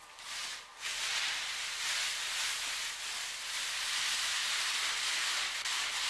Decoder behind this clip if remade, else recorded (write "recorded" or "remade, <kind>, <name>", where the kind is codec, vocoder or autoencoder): remade, vocoder, BigVGAN v2